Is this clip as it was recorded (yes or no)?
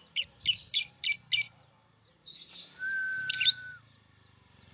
yes